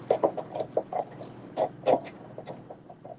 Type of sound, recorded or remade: recorded